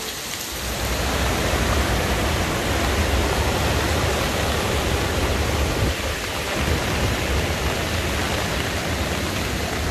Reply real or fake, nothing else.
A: real